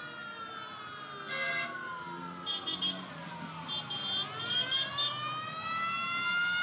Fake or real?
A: real